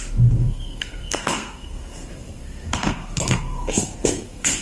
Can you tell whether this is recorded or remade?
remade